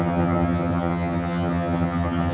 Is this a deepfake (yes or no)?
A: yes